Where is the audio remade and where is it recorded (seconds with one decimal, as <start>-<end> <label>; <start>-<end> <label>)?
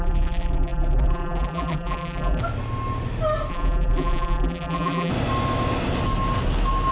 0.0-2.4 remade; 2.4-3.5 recorded; 3.5-5.1 remade; 5.1-6.9 recorded